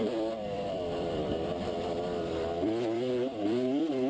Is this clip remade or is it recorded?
remade